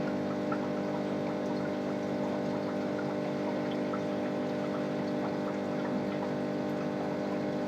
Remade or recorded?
recorded